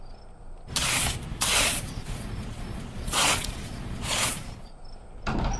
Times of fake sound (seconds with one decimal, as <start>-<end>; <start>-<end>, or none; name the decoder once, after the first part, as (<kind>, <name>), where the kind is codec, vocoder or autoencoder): 1.3-4.7 (vocoder, Vocos)